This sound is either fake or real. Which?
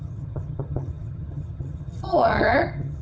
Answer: fake